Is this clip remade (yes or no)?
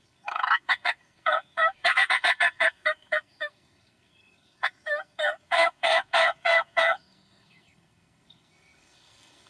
yes